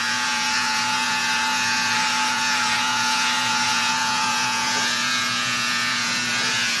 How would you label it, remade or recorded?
remade